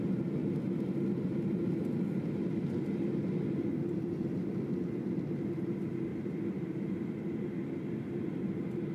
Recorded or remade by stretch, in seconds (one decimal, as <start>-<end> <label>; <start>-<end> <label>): 0.0-6.1 recorded; 6.1-6.8 remade; 6.8-8.9 recorded

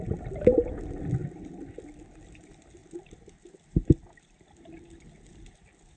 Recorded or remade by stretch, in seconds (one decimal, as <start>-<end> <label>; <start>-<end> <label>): 0.0-6.0 recorded